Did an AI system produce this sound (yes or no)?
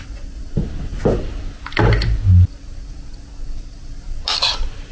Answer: no